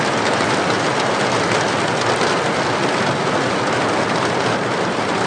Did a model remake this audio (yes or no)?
no